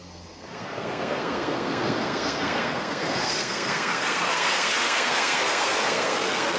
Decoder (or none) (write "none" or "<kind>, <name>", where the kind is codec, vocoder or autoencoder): codec, SNAC